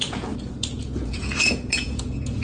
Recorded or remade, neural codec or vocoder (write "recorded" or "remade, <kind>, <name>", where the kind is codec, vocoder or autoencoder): remade, vocoder, Vocos